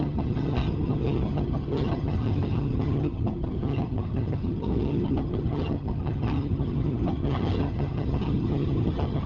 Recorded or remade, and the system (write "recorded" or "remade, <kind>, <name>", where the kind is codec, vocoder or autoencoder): remade, vocoder, HiFi-GAN